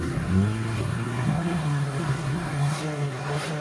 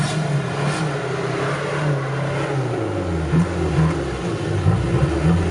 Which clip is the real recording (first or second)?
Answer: second